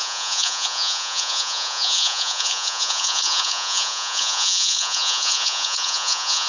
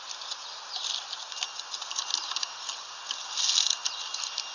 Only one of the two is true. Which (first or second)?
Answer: second